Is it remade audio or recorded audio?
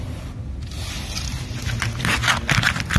recorded